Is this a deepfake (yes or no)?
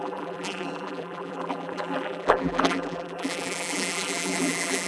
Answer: yes